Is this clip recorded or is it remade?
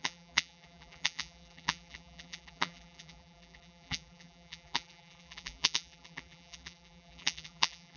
remade